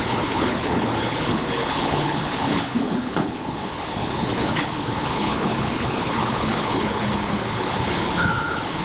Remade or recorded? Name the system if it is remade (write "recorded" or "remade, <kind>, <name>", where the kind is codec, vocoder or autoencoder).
remade, codec, HILCodec